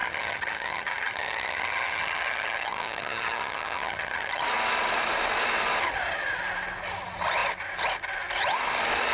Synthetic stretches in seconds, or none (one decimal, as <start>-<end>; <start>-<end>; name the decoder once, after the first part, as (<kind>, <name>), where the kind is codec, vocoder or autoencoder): 0.0-4.4 (vocoder, HiFi-GAN)